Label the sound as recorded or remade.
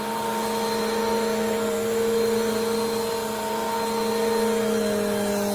recorded